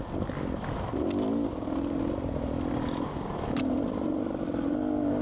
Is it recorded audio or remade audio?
recorded